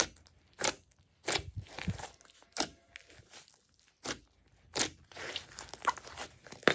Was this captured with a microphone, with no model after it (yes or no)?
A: yes